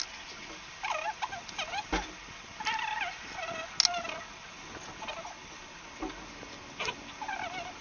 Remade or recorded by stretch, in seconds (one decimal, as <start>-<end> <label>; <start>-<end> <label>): 0.0-7.8 recorded